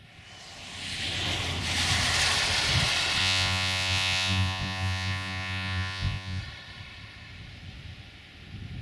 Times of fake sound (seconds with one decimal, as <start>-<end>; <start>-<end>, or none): 3.2-6.4